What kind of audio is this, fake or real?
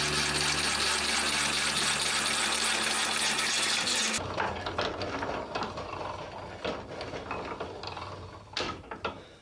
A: real